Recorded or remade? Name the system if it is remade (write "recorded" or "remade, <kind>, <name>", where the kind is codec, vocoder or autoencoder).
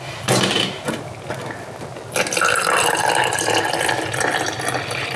recorded